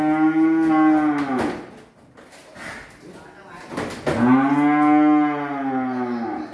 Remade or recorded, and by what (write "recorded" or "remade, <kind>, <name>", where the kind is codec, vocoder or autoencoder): recorded